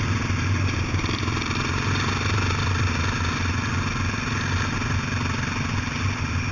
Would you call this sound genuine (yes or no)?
yes